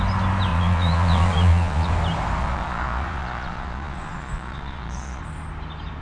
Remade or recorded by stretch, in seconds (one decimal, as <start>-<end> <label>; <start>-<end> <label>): 0.0-0.5 recorded; 0.5-1.9 remade; 1.9-2.4 recorded; 2.4-5.2 remade; 5.2-6.0 recorded